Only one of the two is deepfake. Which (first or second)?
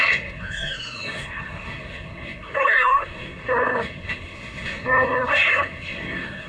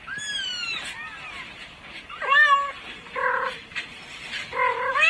first